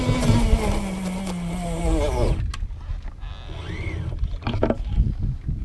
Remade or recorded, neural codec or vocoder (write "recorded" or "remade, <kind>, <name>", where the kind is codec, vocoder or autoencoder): recorded